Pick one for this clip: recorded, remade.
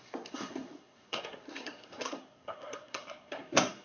remade